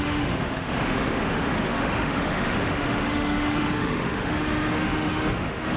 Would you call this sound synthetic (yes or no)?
yes